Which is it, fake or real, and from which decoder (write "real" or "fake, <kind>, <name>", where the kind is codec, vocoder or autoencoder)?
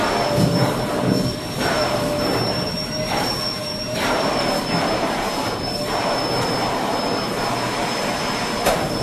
fake, vocoder, BigVGAN v2